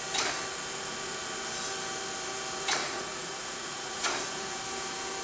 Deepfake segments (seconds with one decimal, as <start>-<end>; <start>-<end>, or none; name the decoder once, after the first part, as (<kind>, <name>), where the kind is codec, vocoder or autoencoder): 2.8-4.1 (vocoder, Vocos)